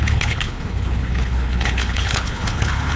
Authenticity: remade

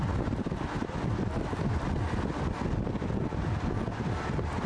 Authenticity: recorded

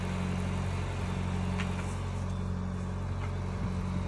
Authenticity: recorded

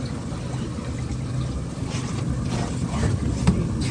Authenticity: recorded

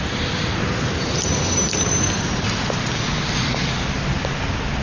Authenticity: recorded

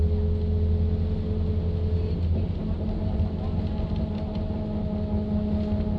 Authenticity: recorded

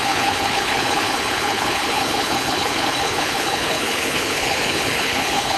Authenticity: remade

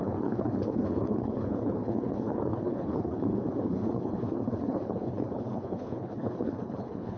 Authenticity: remade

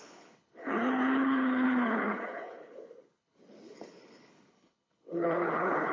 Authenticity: remade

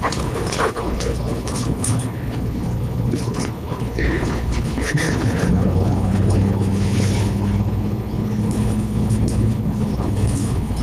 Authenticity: remade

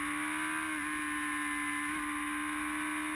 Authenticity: recorded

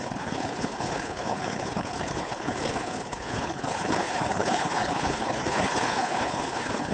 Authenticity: remade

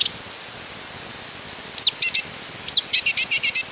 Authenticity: recorded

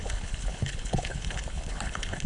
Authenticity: remade